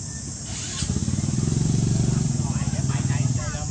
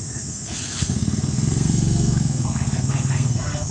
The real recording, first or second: first